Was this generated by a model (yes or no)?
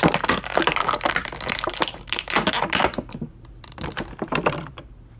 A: yes